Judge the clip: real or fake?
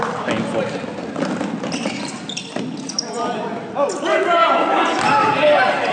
real